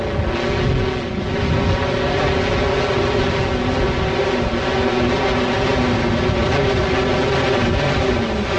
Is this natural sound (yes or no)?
yes